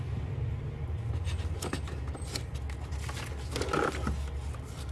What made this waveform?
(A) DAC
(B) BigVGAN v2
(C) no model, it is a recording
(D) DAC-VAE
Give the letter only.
C